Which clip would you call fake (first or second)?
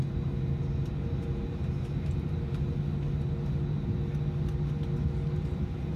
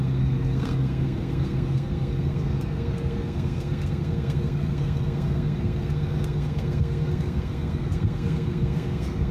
second